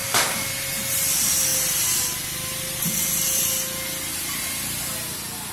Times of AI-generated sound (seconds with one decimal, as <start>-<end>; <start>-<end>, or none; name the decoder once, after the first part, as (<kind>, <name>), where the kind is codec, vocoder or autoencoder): 0.0-0.5 (codec, DAC)